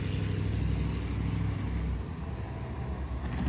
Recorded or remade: recorded